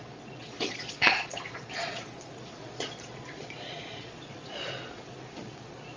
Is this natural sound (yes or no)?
no